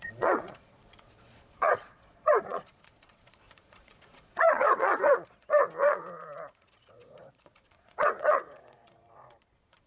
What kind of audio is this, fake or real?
fake